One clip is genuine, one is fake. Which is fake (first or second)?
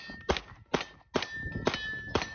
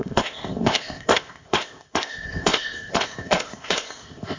second